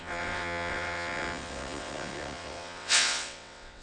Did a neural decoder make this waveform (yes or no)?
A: yes